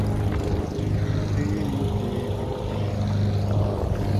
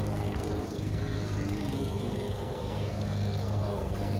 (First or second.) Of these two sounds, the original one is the first